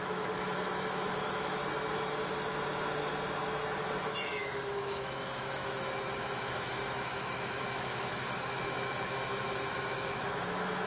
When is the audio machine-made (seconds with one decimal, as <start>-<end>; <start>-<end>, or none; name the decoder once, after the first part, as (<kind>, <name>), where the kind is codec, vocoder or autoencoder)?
0.0-1.6 (autoencoder, DAC-VAE); 3.8-10.9